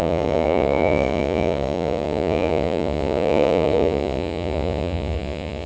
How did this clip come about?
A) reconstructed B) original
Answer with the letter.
A